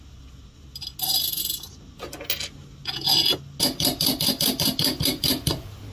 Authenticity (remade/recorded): recorded